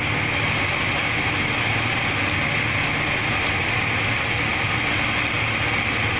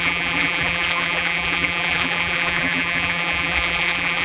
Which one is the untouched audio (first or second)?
first